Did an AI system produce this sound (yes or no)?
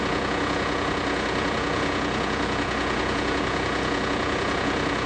yes